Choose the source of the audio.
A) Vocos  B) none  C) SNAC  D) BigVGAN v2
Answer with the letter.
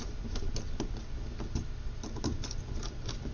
B